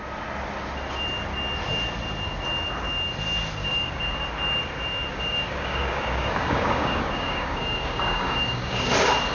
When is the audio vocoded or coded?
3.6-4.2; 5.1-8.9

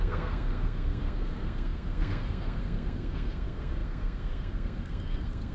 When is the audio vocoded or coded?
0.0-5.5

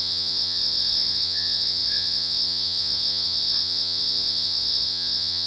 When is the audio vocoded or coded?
0.0-5.5

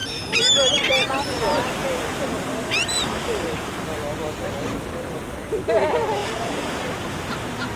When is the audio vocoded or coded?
0.0-3.8; 6.2-6.7

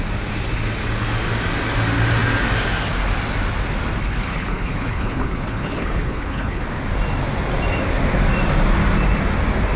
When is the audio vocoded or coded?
4.0-6.6

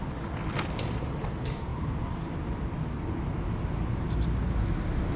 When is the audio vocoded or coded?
none

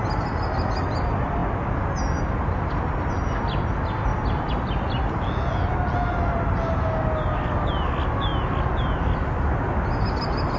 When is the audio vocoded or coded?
none

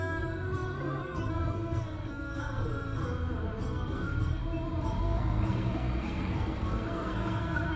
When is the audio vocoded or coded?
0.0-3.0; 3.6-4.4; 5.0-7.8